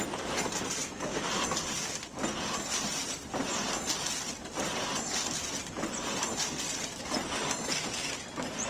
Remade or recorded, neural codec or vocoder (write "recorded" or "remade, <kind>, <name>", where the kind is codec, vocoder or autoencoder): recorded